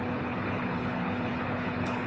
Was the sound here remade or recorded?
remade